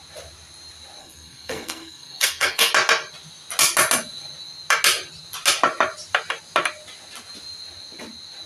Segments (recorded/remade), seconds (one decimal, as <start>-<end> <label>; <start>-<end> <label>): 0.0-1.0 recorded; 1.0-2.7 remade; 2.7-8.5 recorded